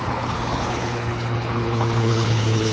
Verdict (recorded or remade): remade